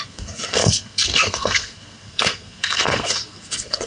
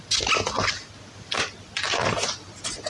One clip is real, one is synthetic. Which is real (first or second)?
second